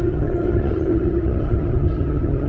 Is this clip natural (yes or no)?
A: no